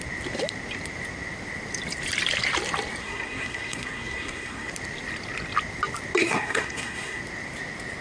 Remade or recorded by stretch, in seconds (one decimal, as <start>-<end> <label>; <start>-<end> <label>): 0.0-3.0 recorded; 3.0-4.7 remade; 4.7-6.2 recorded; 6.2-7.2 remade; 7.2-8.0 recorded